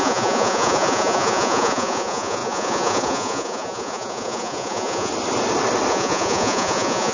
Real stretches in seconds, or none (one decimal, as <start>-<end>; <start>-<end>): 5.1-5.9